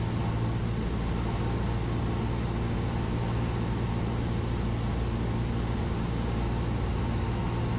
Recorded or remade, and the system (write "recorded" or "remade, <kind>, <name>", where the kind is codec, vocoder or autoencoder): recorded